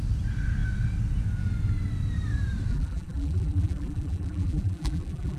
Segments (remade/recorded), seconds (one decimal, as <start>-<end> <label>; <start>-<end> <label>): 0.0-2.7 recorded; 2.7-5.4 remade